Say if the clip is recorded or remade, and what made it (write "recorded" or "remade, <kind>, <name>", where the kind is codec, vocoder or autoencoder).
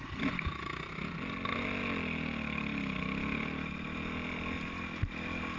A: recorded